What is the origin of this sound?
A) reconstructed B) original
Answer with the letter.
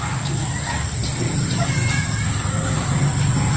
B